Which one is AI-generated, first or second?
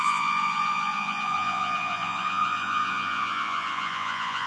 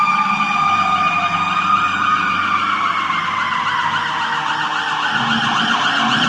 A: first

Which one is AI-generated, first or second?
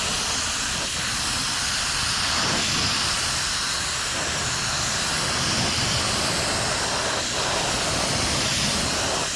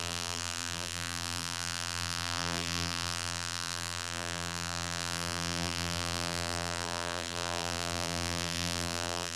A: second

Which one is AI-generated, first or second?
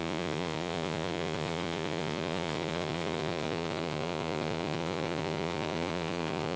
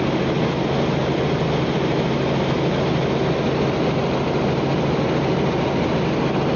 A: first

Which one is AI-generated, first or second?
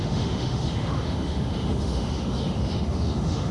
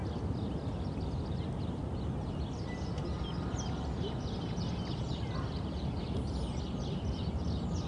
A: first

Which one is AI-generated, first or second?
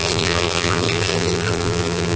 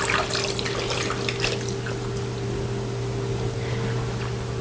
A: first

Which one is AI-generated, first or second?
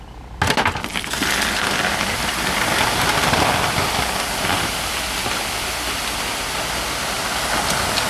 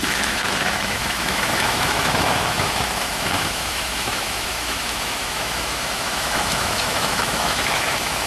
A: second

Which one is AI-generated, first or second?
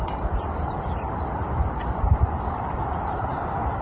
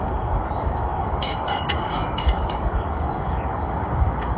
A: second